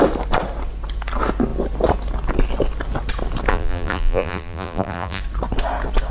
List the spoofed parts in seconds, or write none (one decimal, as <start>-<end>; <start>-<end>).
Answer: 3.5-5.2